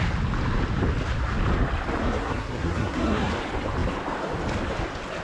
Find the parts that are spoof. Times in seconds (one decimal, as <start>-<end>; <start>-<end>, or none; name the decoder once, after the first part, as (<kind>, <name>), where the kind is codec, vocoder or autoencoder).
2.0-3.3 (codec, SNAC)